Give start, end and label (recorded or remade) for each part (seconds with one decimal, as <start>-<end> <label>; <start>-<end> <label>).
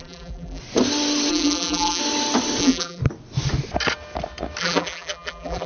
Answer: 0.0-0.6 remade; 0.6-1.3 recorded; 1.3-2.0 remade; 2.0-2.6 recorded; 2.6-3.0 remade; 3.0-4.6 recorded; 4.6-5.7 remade